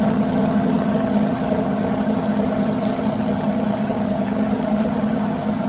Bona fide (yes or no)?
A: no